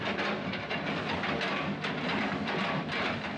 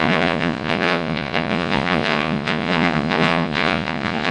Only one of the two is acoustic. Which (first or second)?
first